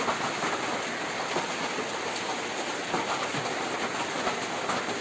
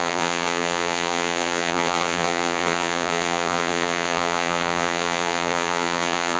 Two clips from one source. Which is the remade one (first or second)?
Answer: second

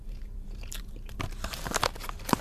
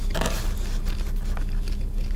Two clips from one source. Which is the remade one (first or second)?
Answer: first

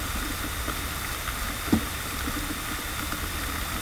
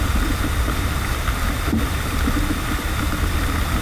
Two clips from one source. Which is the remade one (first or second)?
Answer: second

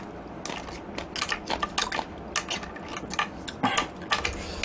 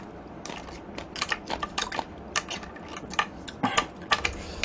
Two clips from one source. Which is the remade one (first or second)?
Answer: second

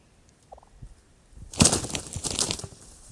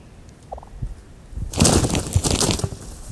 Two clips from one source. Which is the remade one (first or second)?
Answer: first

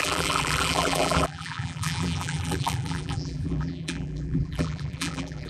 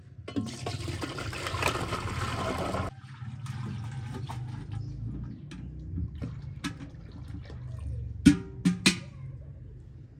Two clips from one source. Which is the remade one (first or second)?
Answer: first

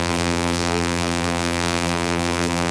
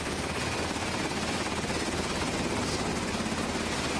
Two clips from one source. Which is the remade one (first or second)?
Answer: first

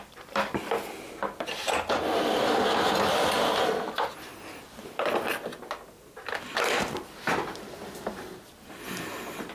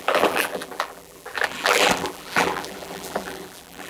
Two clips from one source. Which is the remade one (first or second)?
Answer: second